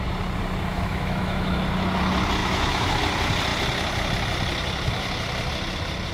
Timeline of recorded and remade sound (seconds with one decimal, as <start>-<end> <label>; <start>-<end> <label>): 0.0-0.7 recorded; 0.7-1.6 remade; 1.6-2.4 recorded; 2.4-3.0 remade; 3.0-6.1 recorded